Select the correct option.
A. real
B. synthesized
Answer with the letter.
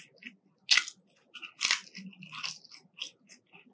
A